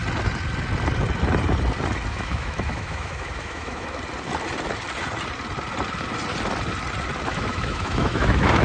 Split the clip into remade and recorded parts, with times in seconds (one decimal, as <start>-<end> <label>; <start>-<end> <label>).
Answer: 0.0-2.1 recorded; 2.1-4.0 remade; 4.0-7.3 recorded; 7.3-8.6 remade